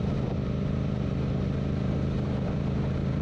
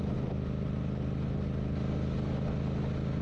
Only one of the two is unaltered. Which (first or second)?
second